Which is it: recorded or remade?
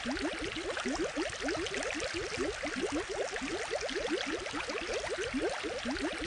recorded